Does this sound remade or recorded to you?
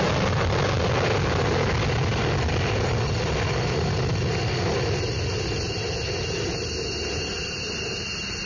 recorded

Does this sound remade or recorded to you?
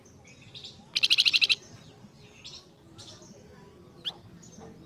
recorded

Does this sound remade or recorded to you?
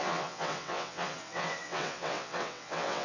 remade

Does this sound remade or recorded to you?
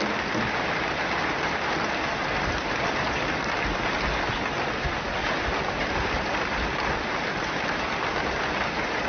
recorded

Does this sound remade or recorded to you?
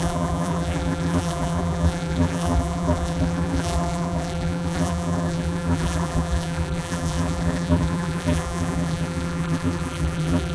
remade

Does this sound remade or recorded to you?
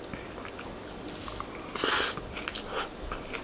recorded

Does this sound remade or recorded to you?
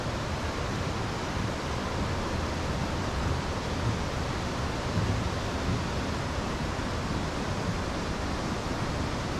recorded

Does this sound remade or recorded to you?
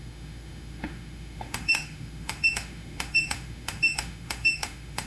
remade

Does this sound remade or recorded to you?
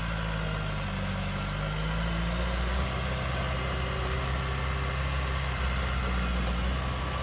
recorded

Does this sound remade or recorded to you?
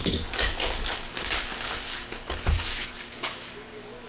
remade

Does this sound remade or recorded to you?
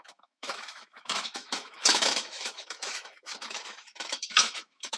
remade